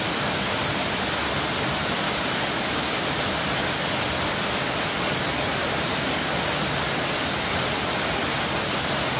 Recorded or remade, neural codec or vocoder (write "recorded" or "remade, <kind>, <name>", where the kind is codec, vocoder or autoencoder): recorded